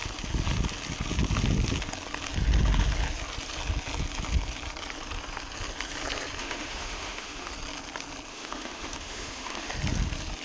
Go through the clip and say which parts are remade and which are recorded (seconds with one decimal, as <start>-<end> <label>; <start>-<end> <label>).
0.0-6.4 recorded; 6.4-7.5 remade; 7.5-8.3 recorded; 8.3-9.7 remade; 9.7-10.4 recorded